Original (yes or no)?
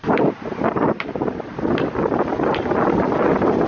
no